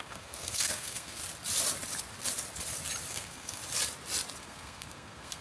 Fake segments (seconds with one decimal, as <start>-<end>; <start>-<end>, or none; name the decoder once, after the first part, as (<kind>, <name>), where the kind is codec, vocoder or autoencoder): 0.0-1.2 (codec, SNAC); 3.1-3.6; 4.4-5.4